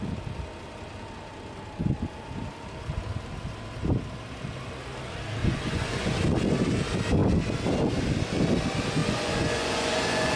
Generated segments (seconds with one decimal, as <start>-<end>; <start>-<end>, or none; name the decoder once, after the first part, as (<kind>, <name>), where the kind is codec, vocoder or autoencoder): 5.4-6.2 (vocoder, Vocos); 9.0-10.4